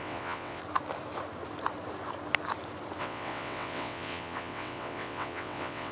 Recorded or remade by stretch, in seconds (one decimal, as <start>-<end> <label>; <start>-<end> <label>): 0.0-0.6 remade; 0.6-3.0 recorded; 3.0-5.9 remade